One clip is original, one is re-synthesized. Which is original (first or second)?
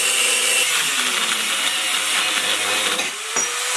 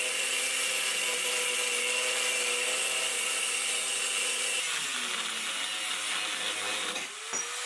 second